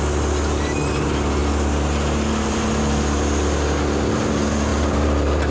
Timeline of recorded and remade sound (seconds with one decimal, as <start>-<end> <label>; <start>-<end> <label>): 0.0-4.7 recorded; 4.7-5.5 remade